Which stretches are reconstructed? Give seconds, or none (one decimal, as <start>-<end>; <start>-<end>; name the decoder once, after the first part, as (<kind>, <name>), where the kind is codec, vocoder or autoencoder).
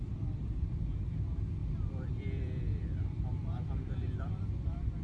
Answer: 1.6-2.7 (vocoder, BigVGAN v2); 4.0-5.0